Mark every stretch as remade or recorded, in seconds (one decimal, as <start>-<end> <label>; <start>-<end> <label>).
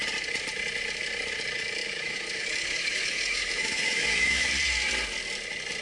0.0-1.8 recorded; 1.8-4.5 remade; 4.5-5.8 recorded